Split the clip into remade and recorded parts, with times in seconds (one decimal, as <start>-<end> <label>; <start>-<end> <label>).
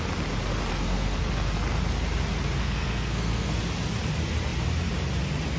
0.0-0.7 recorded; 0.7-1.3 remade; 1.3-2.6 recorded; 2.6-3.6 remade; 3.6-5.6 recorded